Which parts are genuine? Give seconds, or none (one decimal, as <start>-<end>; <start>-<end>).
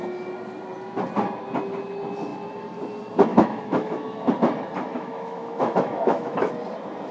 0.0-3.3; 4.3-4.9; 6.5-7.1